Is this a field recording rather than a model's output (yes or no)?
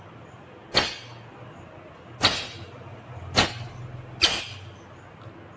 yes